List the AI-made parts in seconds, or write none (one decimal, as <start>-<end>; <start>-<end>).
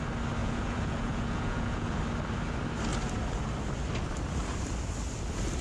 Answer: 0.4-2.0